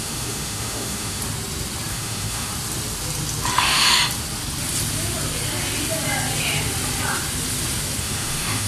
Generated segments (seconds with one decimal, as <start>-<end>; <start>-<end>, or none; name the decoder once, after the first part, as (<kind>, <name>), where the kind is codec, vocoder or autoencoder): 0.0-1.2 (autoencoder, DAC-VAE); 1.9-2.5; 3.5-4.0; 8.0-8.7